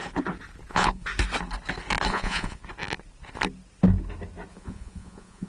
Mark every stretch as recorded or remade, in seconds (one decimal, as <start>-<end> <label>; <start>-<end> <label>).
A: 0.0-0.7 recorded; 0.7-1.1 remade; 1.1-2.1 recorded; 2.1-2.6 remade; 2.6-4.5 recorded; 4.5-5.5 remade